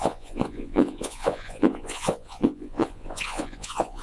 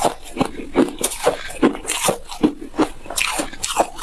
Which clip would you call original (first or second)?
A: second